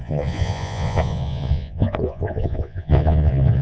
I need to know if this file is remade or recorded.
remade